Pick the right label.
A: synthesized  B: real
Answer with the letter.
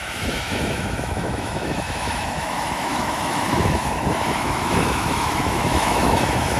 A